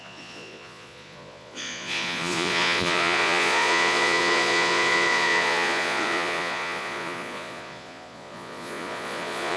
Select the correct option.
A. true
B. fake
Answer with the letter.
B